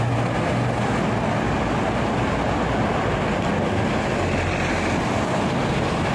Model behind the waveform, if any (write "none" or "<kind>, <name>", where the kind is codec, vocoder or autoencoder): none